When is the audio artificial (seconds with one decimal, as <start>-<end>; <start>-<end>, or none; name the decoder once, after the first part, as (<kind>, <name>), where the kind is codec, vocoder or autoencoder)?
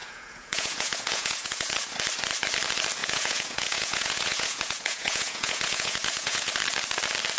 0.0-1.7 (vocoder, Vocos); 3.0-6.5